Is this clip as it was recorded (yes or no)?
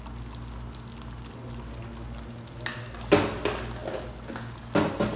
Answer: yes